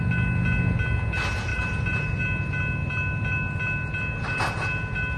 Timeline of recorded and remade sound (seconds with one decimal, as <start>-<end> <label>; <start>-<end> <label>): 0.0-1.5 recorded; 1.5-2.2 remade; 2.2-5.2 recorded